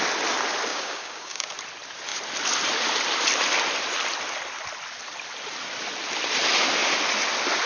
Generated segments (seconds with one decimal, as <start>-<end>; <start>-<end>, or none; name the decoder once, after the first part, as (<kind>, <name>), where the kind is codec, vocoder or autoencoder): 0.7-1.5 (codec, DAC)